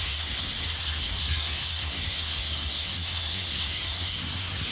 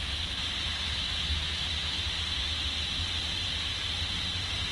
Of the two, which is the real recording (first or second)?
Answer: second